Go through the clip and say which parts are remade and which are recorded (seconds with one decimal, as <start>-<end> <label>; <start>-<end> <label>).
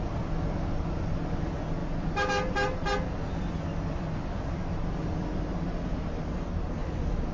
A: 0.0-7.3 recorded